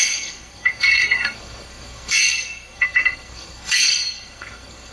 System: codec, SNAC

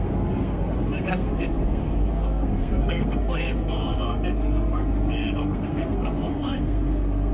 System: codec, SNAC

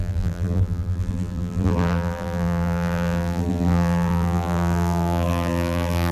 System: vocoder, BigVGAN v2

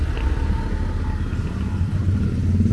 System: none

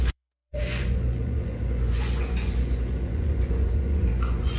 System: vocoder, Vocos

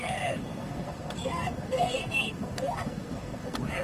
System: codec, SNAC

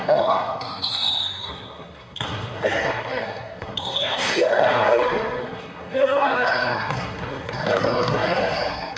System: codec, SNAC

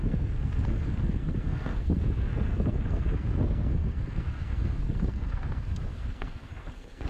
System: codec, SNAC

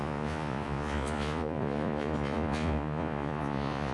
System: vocoder, Vocos